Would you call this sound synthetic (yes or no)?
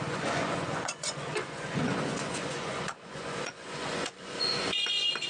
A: yes